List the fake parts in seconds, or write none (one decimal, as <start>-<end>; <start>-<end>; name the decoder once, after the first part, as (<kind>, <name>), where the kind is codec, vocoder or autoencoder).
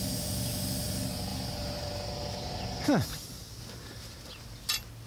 none